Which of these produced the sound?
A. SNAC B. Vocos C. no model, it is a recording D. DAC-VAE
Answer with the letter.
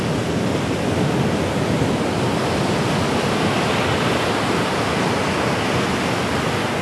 C